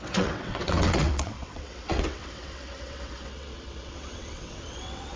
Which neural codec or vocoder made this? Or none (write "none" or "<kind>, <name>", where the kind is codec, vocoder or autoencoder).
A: vocoder, WaveNeXt